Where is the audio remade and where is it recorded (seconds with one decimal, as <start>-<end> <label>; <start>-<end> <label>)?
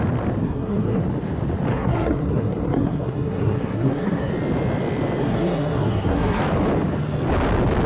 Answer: 0.0-0.4 recorded; 0.4-1.0 remade; 1.0-1.7 recorded; 1.7-4.3 remade; 4.3-5.2 recorded; 5.2-6.4 remade; 6.4-7.9 recorded